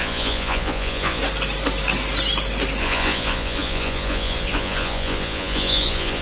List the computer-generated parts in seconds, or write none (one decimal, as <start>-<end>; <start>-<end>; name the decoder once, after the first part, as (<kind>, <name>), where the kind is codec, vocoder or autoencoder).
0.0-1.2 (vocoder, Vocos); 2.8-6.2